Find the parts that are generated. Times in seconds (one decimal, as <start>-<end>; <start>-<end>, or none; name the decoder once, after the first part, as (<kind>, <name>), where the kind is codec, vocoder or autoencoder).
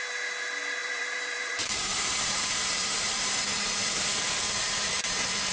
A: 0.8-3.4 (vocoder, BigVGAN v2); 3.8-4.4